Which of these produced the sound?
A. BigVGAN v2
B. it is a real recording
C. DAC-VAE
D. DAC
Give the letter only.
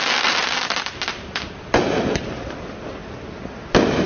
B